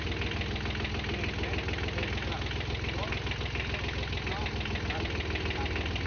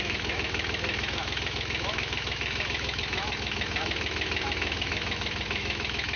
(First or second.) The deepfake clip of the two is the second